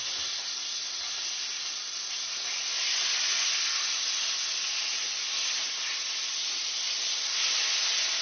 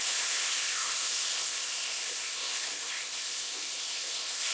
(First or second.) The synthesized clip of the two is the second